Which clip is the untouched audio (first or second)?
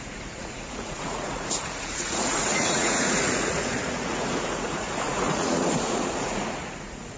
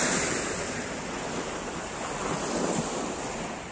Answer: second